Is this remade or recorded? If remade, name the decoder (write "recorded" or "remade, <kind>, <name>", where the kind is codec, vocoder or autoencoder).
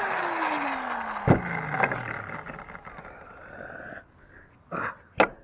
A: recorded